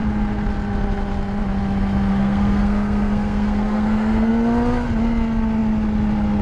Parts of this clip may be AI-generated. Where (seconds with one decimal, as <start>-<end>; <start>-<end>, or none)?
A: 2.1-4.3